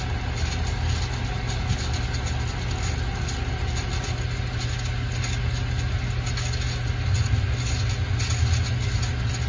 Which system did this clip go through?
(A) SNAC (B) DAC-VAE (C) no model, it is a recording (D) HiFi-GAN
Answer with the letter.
C